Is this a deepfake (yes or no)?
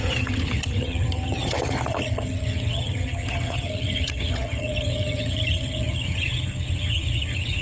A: yes